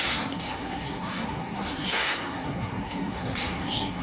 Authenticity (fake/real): fake